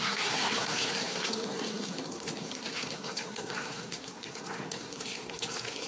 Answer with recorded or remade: remade